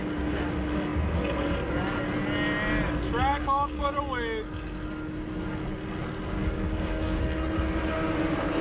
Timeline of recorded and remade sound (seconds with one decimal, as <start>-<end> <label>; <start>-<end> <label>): 0.0-3.3 recorded; 3.3-4.0 remade; 4.0-6.4 recorded; 6.4-7.2 remade; 7.2-8.6 recorded